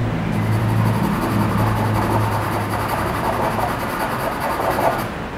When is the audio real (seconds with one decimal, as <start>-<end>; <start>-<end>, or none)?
0.6-5.4